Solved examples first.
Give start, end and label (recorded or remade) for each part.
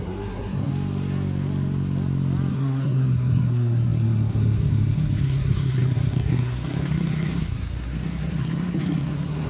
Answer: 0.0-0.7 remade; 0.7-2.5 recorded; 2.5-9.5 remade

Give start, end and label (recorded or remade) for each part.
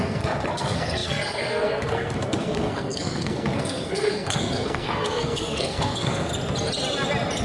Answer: 0.0-6.3 remade; 6.3-7.4 recorded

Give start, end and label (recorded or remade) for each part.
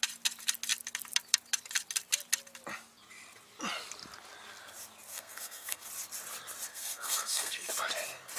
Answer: 0.0-5.1 recorded; 5.1-5.9 remade; 5.9-6.7 recorded; 6.7-7.7 remade; 7.7-8.4 recorded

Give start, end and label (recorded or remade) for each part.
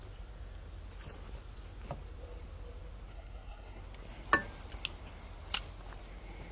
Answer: 0.0-3.1 recorded; 3.1-3.8 remade; 3.8-6.5 recorded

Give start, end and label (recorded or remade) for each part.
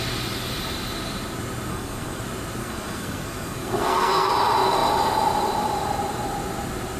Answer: 0.0-1.7 recorded; 1.7-2.2 remade; 2.2-2.6 recorded; 2.6-4.3 remade; 4.3-7.0 recorded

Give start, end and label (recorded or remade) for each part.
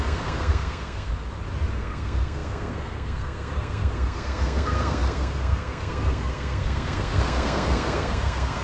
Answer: 0.0-1.1 remade; 1.1-1.7 recorded; 1.7-8.6 remade